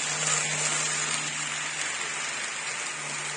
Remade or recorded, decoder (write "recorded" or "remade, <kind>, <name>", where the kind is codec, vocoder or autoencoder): recorded